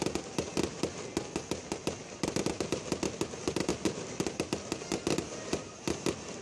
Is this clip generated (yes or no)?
no